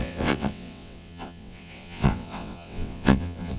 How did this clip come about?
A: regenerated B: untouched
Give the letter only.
A